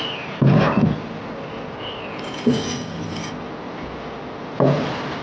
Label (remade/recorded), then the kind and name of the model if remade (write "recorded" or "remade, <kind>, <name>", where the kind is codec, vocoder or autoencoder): remade, vocoder, BigVGAN v2